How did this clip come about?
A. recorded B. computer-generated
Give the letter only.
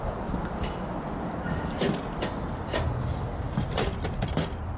A